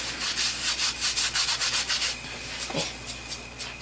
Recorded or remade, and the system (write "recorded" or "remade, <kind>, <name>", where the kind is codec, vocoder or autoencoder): recorded